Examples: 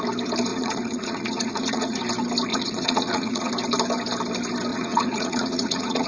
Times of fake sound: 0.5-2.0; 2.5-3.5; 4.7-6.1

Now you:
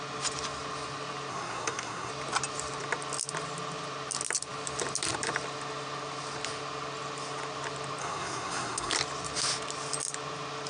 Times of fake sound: 1.3-2.1; 8.0-8.9

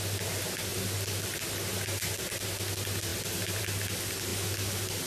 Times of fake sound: none

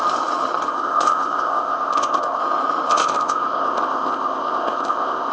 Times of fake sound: 0.7-2.4; 2.9-5.3

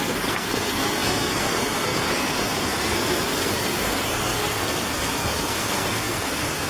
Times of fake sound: 0.0-6.7

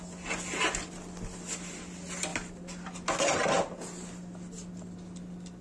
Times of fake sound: none

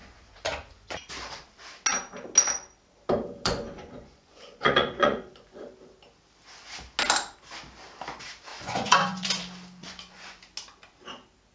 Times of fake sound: 0.0-1.1; 3.4-5.6; 8.5-9.4; 9.8-10.4

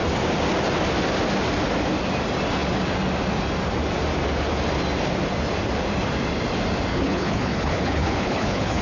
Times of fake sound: 6.9-8.8